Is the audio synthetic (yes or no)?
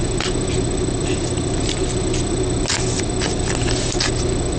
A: no